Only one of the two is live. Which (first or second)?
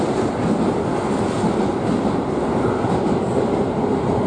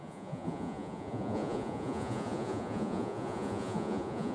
first